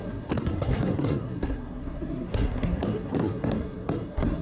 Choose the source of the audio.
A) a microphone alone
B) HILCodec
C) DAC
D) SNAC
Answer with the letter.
D